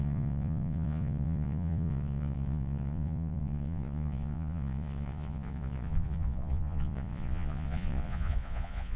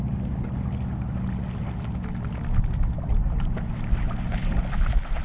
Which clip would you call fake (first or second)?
first